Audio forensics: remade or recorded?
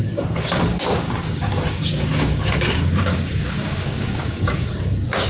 remade